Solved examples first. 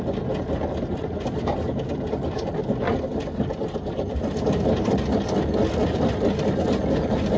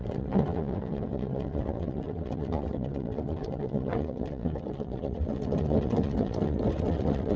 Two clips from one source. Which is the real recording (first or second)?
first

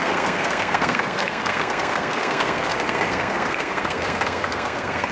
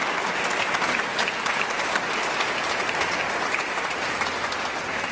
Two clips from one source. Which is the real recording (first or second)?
second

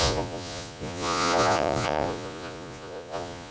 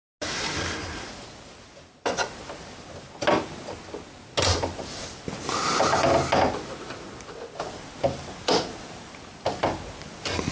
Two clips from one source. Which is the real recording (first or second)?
second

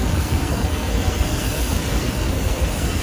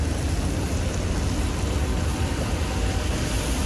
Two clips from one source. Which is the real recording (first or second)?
second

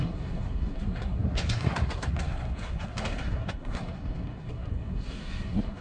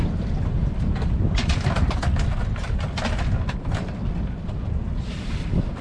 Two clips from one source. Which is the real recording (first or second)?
second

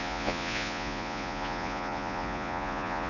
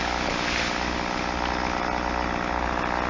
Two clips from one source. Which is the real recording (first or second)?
second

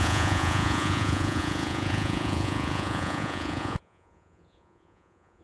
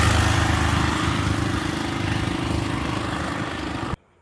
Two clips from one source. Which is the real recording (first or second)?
second